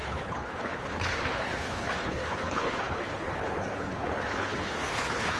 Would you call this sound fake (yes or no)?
yes